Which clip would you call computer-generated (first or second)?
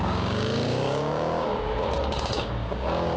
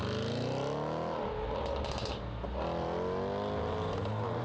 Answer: first